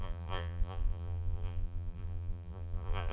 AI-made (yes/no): yes